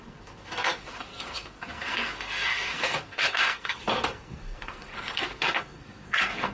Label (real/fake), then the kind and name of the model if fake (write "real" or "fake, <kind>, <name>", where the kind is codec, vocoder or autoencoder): fake, codec, SNAC